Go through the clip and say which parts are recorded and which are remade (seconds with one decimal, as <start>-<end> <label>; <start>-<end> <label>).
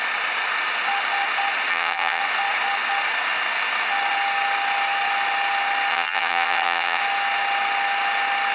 0.0-1.7 recorded; 1.7-2.2 remade; 2.2-5.9 recorded; 5.9-7.0 remade; 7.0-8.5 recorded